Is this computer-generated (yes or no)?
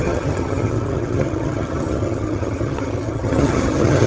yes